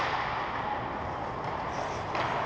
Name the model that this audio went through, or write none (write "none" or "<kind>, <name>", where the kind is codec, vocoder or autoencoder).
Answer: none